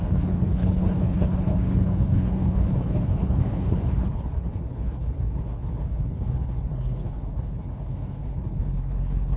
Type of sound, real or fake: fake